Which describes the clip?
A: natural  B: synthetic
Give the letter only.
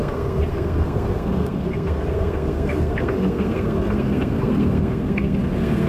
B